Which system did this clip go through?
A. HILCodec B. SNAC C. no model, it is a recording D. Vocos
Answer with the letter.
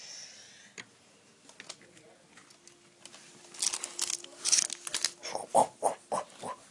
C